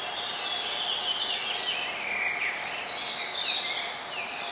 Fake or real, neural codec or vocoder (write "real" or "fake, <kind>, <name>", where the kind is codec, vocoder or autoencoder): real